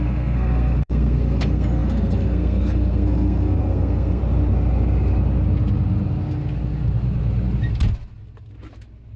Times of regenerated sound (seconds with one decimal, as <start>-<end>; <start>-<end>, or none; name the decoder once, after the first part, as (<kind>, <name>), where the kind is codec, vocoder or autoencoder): 0.0-4.2 (codec, SNAC)